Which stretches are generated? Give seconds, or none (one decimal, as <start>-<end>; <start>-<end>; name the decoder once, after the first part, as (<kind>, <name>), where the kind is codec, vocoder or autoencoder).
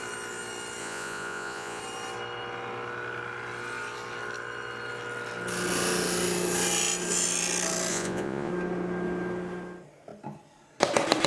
0.8-1.8 (vocoder, Vocos); 7.9-8.5